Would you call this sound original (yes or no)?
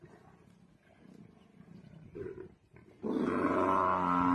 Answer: yes